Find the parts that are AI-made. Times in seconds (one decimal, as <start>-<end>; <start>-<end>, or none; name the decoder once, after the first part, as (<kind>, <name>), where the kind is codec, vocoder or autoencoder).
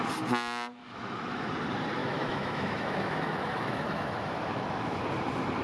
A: 0.8-1.5 (autoencoder, DAC-VAE); 2.0-5.0